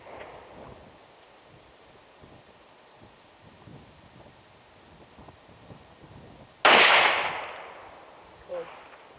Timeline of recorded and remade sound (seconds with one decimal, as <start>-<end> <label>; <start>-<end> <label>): 0.0-9.2 recorded